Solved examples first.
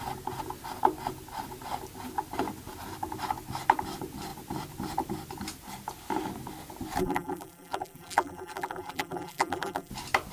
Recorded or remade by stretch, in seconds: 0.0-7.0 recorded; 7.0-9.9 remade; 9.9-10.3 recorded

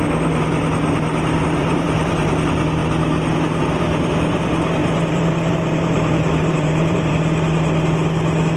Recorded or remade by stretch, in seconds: 0.0-1.6 recorded; 1.6-2.3 remade; 2.3-4.8 recorded; 4.8-7.1 remade; 7.1-8.6 recorded

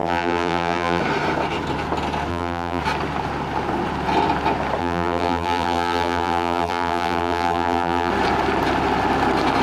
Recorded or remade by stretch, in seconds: 0.0-1.0 remade; 1.0-2.3 recorded; 2.3-2.8 remade; 2.8-4.8 recorded; 4.8-8.1 remade; 8.1-9.6 recorded

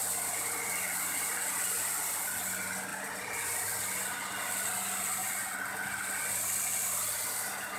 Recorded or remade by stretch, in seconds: 0.0-1.5 remade; 1.5-2.9 recorded; 2.9-3.8 remade; 3.8-7.8 recorded

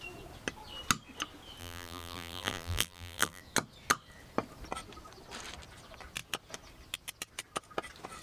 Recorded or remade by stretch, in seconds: 0.0-1.6 recorded; 1.6-3.4 remade; 3.4-8.2 recorded

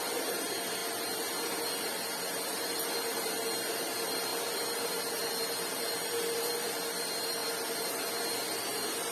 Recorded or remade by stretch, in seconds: 0.0-0.8 remade; 0.8-2.2 recorded; 2.2-4.3 remade; 4.3-5.4 recorded; 5.4-7.4 remade; 7.4-8.3 recorded; 8.3-9.1 remade

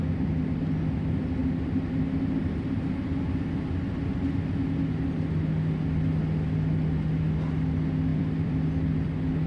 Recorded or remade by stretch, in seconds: 0.0-8.1 recorded; 8.1-9.1 remade; 9.1-9.5 recorded